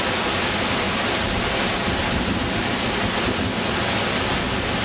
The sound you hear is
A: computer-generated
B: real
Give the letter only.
B